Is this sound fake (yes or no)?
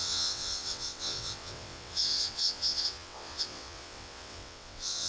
yes